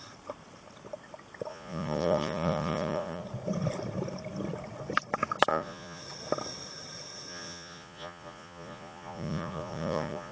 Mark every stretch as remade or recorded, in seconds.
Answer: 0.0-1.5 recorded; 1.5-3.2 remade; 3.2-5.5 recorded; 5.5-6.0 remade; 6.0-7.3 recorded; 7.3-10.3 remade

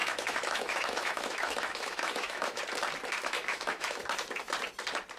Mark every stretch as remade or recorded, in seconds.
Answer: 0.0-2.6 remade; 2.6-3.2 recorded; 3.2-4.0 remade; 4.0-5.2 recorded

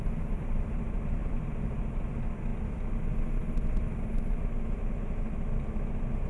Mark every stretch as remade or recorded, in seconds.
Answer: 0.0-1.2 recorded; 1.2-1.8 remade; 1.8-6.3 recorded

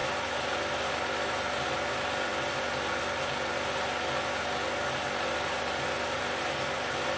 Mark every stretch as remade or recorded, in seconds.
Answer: 0.0-7.2 recorded